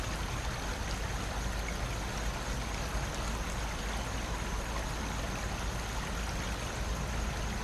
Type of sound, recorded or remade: recorded